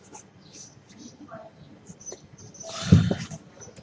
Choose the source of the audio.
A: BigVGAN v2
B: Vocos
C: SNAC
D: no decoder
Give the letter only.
D